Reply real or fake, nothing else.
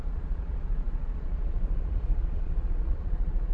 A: fake